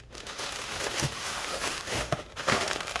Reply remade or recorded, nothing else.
remade